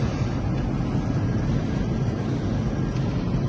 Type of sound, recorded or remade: recorded